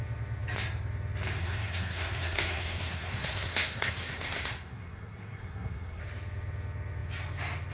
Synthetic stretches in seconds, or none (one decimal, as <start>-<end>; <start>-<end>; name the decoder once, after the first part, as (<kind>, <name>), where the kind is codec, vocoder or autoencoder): 1.4-6.0 (codec, SNAC)